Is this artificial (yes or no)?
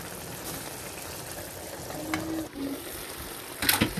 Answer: no